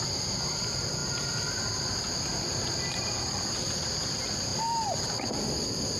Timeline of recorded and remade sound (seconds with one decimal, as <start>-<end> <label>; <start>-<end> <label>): 0.0-6.0 recorded

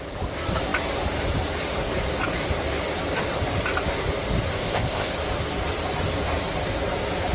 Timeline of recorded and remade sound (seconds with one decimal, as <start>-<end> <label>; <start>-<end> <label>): 0.0-4.5 recorded; 4.5-5.1 remade; 5.1-7.3 recorded

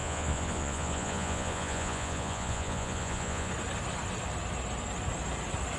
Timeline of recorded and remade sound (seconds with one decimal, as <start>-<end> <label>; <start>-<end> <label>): 0.0-3.5 remade; 3.5-5.8 recorded

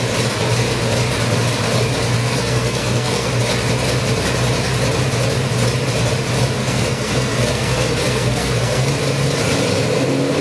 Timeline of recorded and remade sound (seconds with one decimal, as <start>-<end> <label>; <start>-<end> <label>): 0.0-2.2 recorded; 2.2-3.3 remade; 3.3-6.6 recorded; 6.6-8.9 remade; 8.9-10.4 recorded

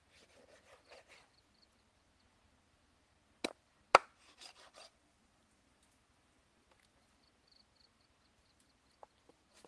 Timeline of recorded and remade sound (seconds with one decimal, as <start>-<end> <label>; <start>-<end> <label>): 0.0-4.4 recorded; 4.4-5.4 remade; 5.4-9.7 recorded

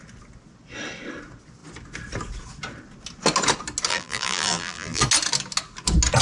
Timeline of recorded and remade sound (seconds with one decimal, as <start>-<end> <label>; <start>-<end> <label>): 0.0-3.9 recorded; 3.9-5.0 remade; 5.0-6.2 recorded

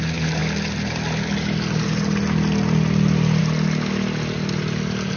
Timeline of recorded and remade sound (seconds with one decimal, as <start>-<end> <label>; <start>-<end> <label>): 0.0-5.2 recorded

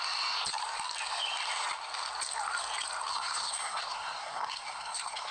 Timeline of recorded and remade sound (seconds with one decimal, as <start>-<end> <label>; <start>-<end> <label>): 0.0-3.1 recorded; 3.1-5.3 remade